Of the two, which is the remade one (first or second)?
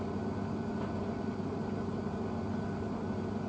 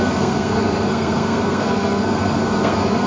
second